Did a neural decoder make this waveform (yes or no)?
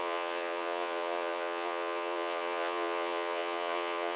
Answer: yes